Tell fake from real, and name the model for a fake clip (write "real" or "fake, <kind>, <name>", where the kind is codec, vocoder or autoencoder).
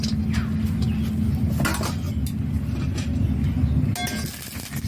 real